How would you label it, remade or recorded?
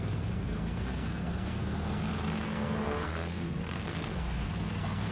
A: remade